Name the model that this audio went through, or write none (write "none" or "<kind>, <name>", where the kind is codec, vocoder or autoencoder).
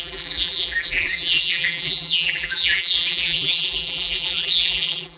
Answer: vocoder, BigVGAN v2